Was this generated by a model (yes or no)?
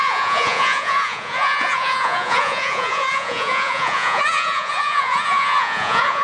yes